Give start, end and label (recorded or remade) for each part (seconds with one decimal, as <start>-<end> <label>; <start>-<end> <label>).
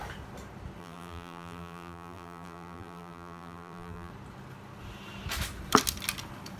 0.0-0.8 recorded; 0.8-4.1 remade; 4.1-6.6 recorded